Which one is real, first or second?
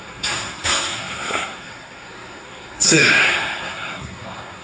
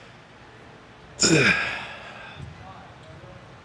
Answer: second